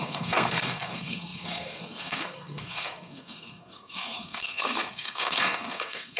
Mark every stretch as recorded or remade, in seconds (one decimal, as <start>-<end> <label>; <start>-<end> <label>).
0.0-6.2 remade